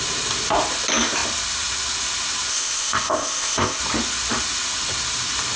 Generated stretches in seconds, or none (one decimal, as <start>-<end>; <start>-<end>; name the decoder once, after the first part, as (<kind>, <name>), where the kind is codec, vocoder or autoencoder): 2.5-3.8 (codec, ZipCodec)